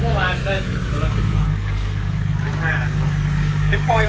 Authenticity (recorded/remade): remade